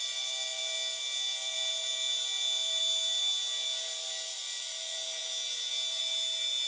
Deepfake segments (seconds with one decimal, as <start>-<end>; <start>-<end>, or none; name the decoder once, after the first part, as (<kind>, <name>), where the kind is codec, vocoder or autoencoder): none